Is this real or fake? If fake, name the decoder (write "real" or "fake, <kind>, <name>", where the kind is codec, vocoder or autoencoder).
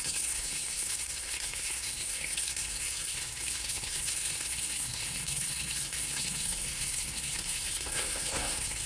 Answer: fake, codec, SNAC